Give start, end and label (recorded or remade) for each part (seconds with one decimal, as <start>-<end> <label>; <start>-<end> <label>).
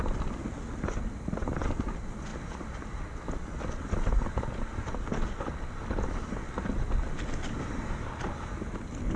0.0-2.3 recorded; 2.3-3.2 remade; 3.2-9.2 recorded